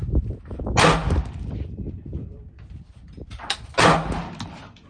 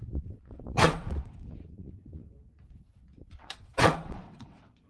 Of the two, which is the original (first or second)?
first